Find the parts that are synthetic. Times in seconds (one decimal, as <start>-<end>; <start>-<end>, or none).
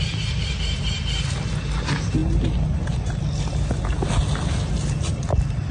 none